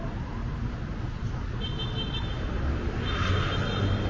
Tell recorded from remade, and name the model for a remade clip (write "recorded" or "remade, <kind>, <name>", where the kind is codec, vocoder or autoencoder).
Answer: recorded